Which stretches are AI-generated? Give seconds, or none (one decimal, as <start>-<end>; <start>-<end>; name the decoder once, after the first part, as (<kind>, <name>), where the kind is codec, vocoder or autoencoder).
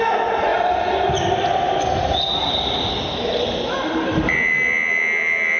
none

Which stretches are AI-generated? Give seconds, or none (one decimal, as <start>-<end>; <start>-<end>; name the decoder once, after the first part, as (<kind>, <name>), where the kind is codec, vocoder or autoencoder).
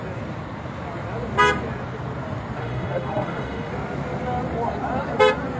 2.6-3.7 (autoencoder, DAC-VAE)